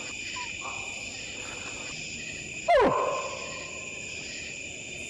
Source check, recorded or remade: recorded